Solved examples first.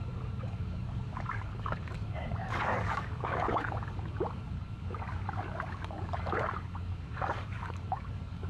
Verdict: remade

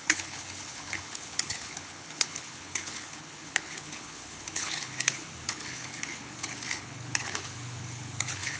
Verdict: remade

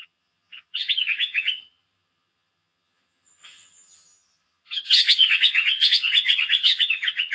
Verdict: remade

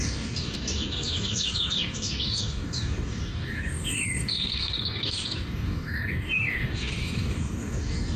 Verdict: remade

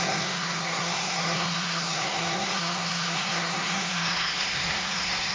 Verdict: remade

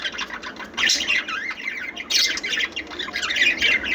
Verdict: recorded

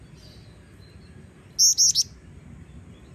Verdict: recorded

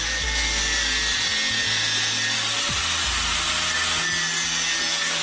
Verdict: recorded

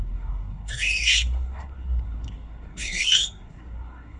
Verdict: remade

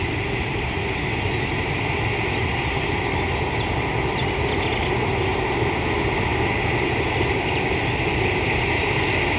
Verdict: recorded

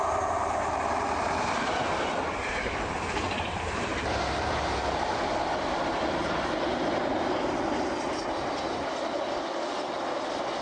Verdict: recorded